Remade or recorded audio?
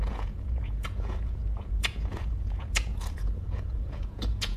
remade